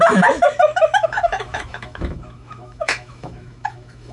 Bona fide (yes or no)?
no